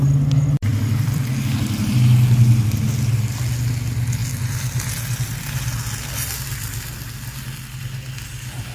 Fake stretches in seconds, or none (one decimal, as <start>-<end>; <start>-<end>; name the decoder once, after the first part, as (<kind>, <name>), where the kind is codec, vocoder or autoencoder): 0.7-1.3 (vocoder, BigVGAN v2)